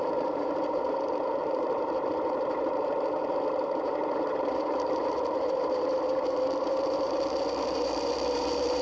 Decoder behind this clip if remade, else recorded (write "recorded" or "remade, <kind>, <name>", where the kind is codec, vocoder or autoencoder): remade, vocoder, BigVGAN v2